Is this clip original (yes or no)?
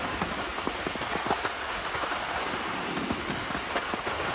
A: yes